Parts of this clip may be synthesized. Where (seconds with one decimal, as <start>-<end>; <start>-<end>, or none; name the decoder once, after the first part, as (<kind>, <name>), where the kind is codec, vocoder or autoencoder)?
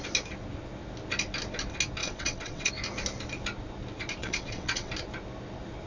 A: 2.0-2.7 (vocoder, WaveNeXt); 4.2-4.9